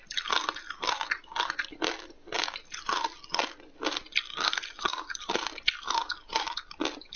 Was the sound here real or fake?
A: real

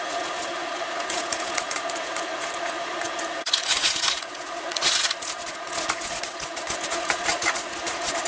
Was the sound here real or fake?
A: fake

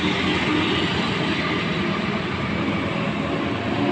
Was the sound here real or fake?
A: real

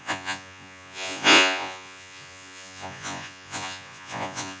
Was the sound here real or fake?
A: fake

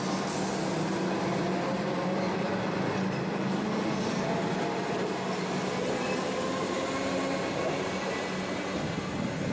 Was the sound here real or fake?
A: real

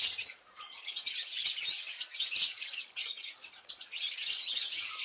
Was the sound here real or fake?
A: fake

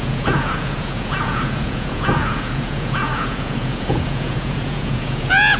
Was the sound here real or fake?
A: fake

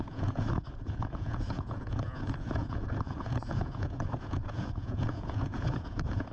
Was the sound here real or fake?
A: fake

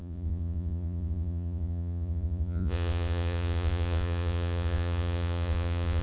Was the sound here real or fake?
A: fake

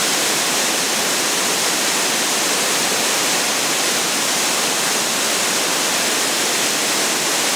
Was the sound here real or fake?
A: real